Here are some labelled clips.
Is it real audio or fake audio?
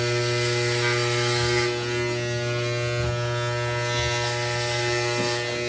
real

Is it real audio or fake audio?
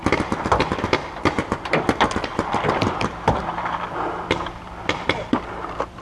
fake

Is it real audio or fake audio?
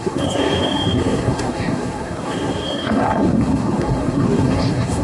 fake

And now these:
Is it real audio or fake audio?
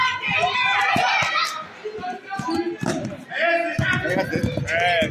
real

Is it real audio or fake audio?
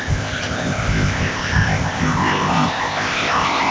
fake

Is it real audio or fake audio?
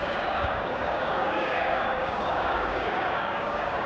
fake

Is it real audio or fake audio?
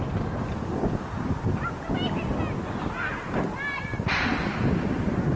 real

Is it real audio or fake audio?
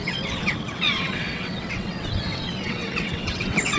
fake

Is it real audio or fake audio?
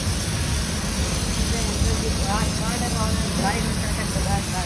real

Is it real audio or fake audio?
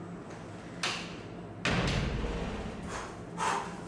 real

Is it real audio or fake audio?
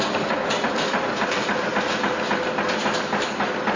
real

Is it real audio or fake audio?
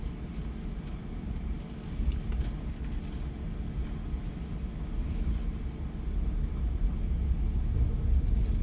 real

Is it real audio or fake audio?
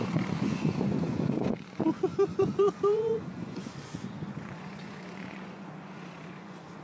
fake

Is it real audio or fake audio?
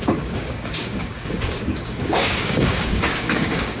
fake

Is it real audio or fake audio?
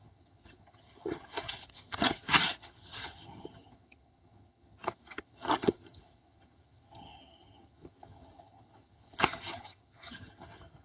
fake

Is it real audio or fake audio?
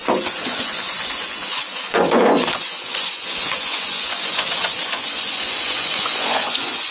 fake